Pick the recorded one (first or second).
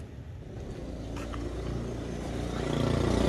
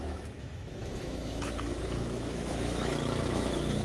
first